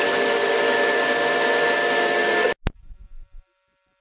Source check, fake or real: real